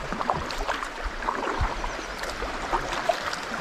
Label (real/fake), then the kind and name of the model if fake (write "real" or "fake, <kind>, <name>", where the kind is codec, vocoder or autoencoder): fake, vocoder, BigVGAN v2